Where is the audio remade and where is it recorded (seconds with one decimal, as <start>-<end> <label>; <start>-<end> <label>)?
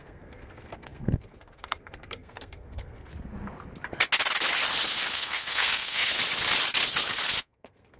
0.0-3.1 remade; 3.1-5.1 recorded; 5.1-6.2 remade; 6.2-7.4 recorded; 7.4-8.0 remade